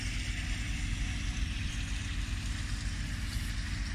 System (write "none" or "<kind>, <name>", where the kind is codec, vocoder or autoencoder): none